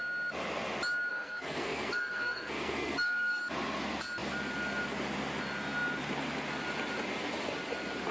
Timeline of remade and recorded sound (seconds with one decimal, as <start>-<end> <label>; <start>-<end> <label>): 0.0-1.1 recorded; 1.1-3.4 remade; 3.4-8.1 recorded